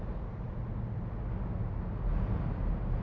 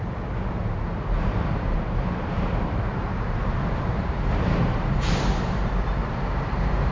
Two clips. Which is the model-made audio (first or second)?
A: second